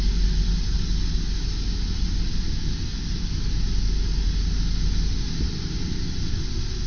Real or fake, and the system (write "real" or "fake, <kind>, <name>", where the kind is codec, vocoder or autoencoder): real